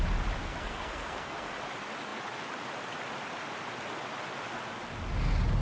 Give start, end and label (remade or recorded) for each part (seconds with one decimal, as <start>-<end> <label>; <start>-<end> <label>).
0.0-0.4 recorded; 0.4-1.5 remade; 1.5-5.6 recorded